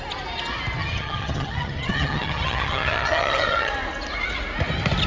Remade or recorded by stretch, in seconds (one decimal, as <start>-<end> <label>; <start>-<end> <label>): 0.0-0.8 recorded; 0.8-3.7 remade; 3.7-5.1 recorded